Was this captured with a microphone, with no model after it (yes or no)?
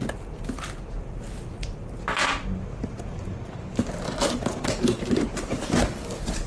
yes